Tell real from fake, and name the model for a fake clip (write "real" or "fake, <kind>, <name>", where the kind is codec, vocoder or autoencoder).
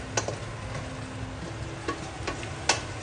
real